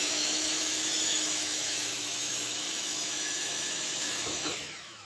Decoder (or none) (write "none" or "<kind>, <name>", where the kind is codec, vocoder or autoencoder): autoencoder, DAC-VAE